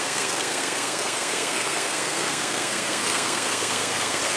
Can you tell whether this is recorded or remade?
remade